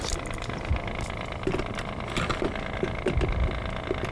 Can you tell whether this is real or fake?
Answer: real